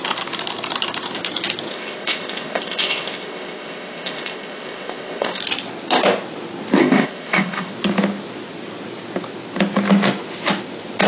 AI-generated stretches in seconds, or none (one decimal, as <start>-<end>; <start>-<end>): 1.7-5.4; 6.8-7.7